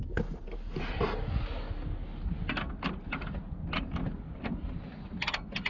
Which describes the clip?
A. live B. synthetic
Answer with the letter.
A